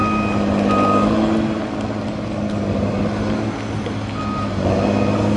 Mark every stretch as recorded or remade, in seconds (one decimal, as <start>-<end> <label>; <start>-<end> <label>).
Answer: 0.0-5.4 recorded